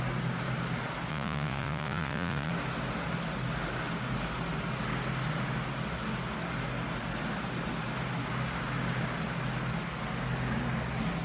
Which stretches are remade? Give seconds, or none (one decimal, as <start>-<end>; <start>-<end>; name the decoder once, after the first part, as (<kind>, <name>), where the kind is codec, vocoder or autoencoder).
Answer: 1.1-2.5 (vocoder, Vocos)